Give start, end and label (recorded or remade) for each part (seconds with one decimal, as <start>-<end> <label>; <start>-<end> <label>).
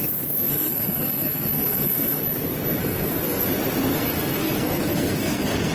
0.0-0.5 recorded; 0.5-2.2 remade; 2.2-2.8 recorded; 2.8-3.5 remade; 3.5-3.9 recorded; 3.9-5.7 remade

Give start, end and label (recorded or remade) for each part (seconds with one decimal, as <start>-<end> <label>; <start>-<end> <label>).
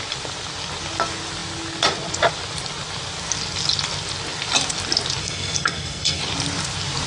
0.0-5.2 recorded; 5.2-6.2 remade; 6.2-7.1 recorded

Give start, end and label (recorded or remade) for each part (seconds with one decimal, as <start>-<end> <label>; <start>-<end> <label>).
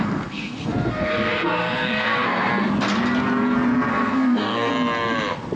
0.0-2.5 remade; 2.5-3.9 recorded; 3.9-4.7 remade; 4.7-5.6 recorded